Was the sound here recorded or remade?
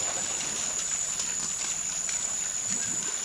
recorded